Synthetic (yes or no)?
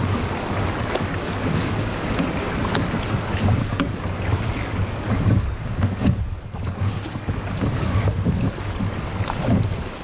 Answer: yes